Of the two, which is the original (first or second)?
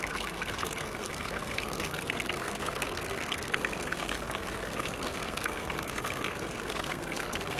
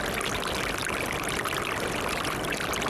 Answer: second